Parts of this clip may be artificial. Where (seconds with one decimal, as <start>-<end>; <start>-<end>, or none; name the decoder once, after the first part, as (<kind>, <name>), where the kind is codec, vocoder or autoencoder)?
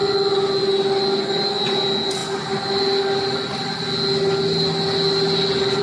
none